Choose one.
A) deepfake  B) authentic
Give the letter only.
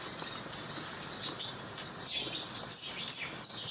B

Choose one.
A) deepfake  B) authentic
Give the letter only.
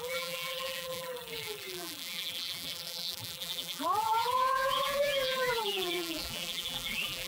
A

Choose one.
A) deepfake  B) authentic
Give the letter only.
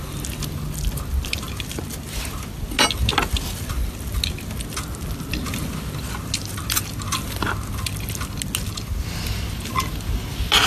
B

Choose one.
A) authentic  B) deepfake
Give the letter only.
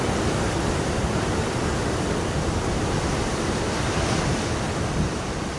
B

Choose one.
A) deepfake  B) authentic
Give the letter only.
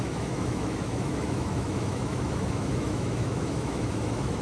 A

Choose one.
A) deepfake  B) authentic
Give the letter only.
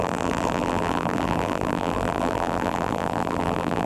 A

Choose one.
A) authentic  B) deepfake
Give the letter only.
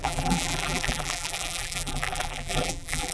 B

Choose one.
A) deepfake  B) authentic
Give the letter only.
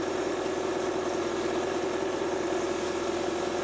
A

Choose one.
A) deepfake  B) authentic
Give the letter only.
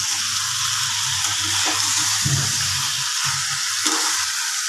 B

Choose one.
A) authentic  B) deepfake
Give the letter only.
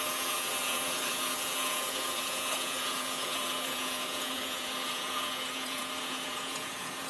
B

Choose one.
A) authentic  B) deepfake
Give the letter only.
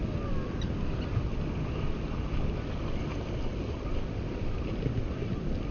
A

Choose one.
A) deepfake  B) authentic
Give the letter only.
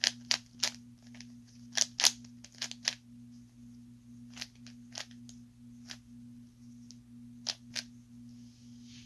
B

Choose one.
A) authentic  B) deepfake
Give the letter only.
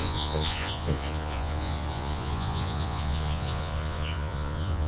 B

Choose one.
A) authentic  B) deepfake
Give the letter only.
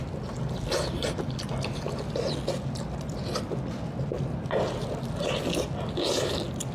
A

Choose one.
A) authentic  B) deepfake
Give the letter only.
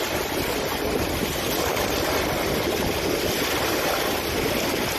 A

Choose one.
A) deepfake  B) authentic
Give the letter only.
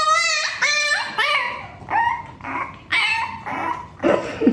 B